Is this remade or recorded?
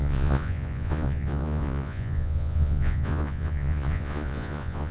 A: remade